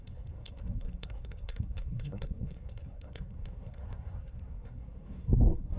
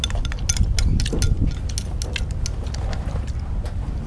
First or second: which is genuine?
second